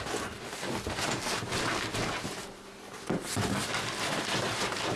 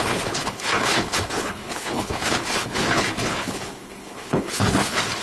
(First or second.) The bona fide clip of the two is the first